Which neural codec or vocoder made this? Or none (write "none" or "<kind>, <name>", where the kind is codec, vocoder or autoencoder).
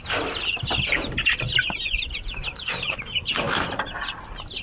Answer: none